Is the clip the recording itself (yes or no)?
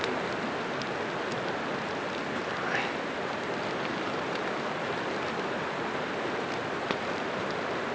yes